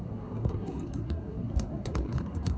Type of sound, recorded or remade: remade